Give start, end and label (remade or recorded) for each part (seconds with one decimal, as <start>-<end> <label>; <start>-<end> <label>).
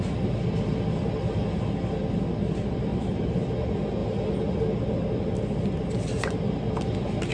0.0-2.9 recorded; 2.9-3.4 remade; 3.4-4.0 recorded; 4.0-4.6 remade; 4.6-7.3 recorded